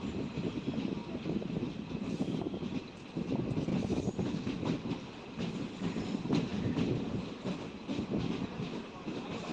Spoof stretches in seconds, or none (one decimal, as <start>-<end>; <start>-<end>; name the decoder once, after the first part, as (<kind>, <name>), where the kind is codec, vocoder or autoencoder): none